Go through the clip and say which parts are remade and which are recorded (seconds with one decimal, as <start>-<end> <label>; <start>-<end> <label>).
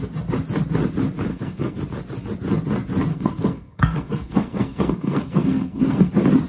0.0-1.3 recorded; 1.3-1.8 remade; 1.8-3.1 recorded; 3.1-6.1 remade; 6.1-6.5 recorded